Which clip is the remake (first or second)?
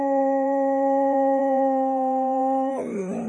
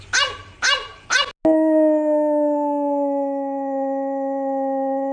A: first